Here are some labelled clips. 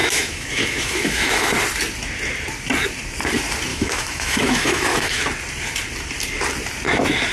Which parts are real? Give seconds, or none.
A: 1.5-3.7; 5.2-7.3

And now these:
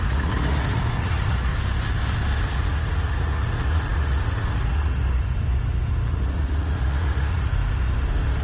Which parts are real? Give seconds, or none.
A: 1.5-2.5; 5.0-6.1; 7.6-8.4

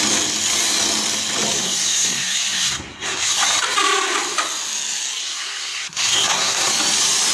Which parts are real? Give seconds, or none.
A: 0.0-1.6; 3.4-5.2; 6.7-7.3

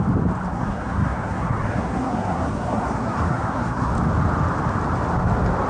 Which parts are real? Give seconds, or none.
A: 0.0-0.5; 3.9-5.7